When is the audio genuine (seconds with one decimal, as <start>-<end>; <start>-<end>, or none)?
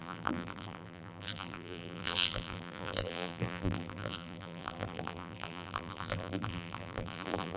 none